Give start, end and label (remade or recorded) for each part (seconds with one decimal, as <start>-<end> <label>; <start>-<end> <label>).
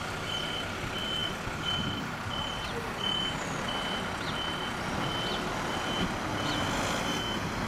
0.0-7.7 recorded